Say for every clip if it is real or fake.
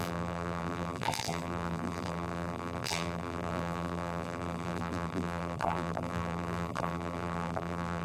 fake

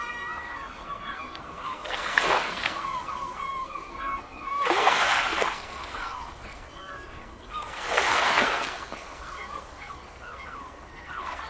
fake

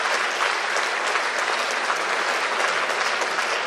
real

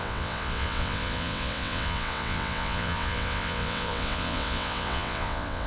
fake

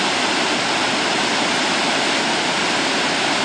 real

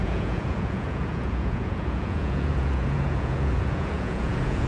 fake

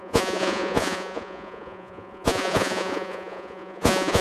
fake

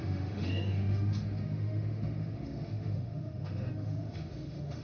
fake